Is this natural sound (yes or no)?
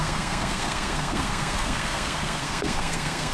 no